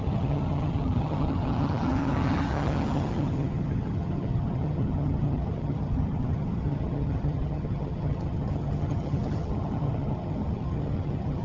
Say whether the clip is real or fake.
fake